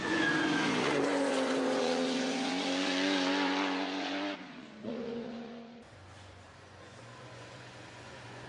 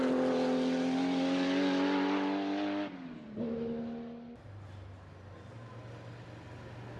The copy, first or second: first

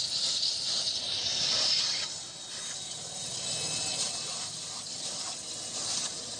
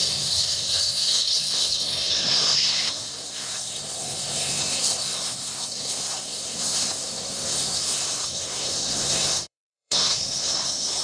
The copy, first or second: second